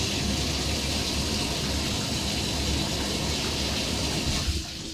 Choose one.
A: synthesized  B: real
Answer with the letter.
B